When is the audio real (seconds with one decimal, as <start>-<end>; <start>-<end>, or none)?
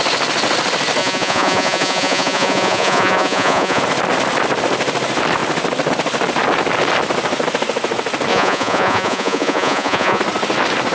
0.0-1.0; 3.8-8.3; 10.2-10.9